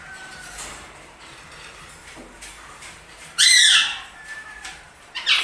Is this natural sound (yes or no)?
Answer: no